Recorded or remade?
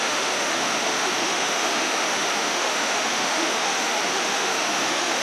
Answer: remade